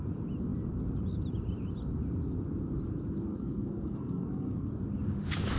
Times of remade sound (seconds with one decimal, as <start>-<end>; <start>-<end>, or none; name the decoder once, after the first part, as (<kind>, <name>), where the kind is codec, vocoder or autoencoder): 3.3-4.7 (codec, SNAC)